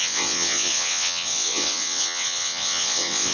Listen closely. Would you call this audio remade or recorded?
remade